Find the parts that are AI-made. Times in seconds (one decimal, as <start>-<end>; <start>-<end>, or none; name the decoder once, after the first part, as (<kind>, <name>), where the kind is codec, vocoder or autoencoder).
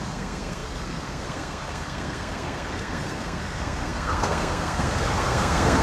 0.0-5.8 (codec, SNAC)